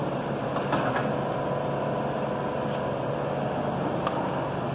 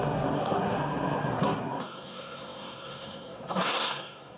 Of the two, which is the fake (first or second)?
second